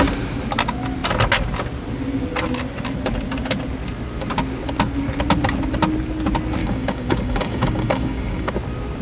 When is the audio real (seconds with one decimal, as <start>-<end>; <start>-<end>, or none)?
0.0-6.6; 8.5-9.0